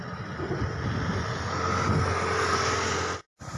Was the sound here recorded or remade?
recorded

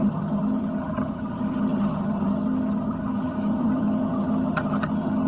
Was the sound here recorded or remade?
remade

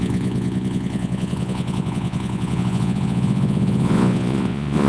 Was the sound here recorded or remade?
remade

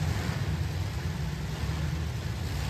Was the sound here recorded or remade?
recorded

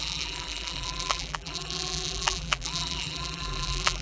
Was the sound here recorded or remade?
remade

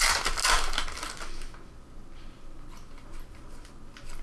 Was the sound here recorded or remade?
recorded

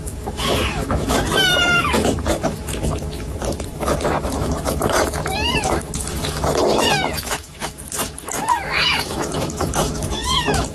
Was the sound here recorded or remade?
remade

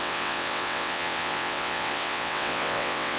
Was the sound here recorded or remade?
remade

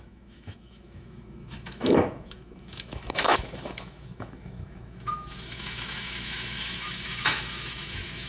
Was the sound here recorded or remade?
remade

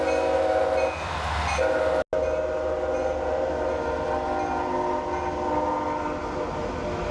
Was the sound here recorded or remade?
recorded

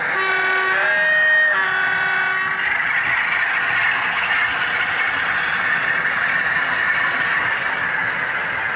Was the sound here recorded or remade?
recorded